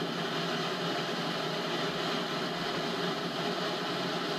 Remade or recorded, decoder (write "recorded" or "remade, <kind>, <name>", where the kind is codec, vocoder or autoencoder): recorded